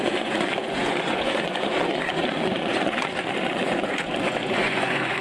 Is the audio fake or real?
fake